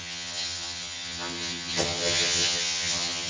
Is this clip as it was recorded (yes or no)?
no